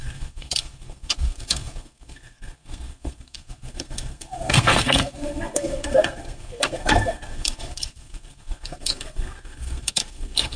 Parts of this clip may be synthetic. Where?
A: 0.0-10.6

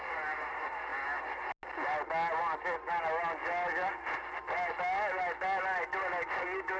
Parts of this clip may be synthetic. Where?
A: none

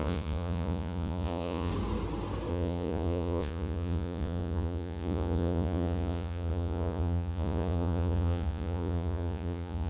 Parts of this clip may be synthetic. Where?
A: 0.0-1.7; 2.5-9.9

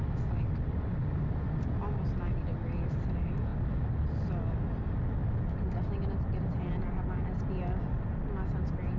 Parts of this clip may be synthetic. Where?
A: none

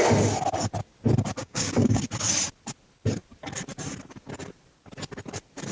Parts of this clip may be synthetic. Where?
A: 1.4-2.0

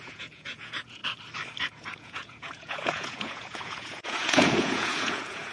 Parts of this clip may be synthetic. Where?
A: 0.0-1.0; 1.6-5.5